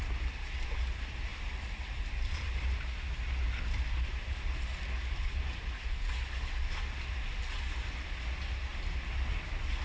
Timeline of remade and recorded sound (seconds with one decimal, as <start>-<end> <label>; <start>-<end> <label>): 0.0-9.8 recorded